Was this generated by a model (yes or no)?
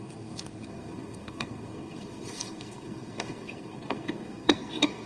yes